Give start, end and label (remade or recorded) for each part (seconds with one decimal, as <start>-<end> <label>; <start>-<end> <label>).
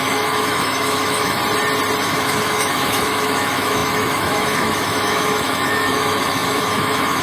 0.0-1.4 remade; 1.4-2.0 recorded; 2.0-7.2 remade